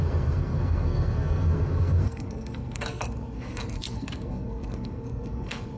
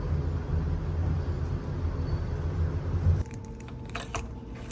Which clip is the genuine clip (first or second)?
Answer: second